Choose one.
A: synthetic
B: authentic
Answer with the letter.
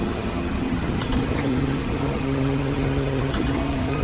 A